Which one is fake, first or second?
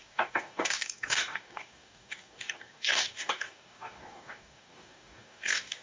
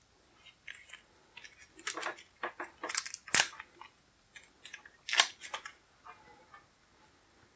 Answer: first